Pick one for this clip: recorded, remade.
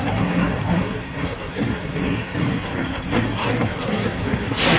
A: remade